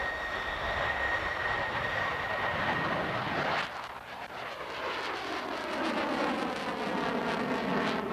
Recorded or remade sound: recorded